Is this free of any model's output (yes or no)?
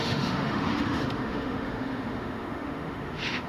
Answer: no